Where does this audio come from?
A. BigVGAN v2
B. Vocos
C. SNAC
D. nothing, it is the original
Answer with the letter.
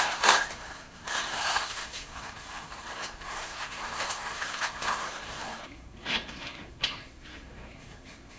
C